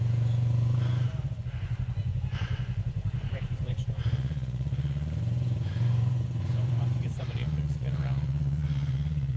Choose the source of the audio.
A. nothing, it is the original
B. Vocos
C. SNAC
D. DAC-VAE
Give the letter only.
B